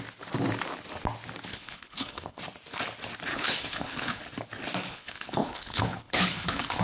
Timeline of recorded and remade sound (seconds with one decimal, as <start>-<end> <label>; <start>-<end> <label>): 0.0-1.5 recorded; 1.5-2.4 remade; 2.4-3.3 recorded; 3.3-4.2 remade; 4.2-4.9 recorded; 4.9-6.8 remade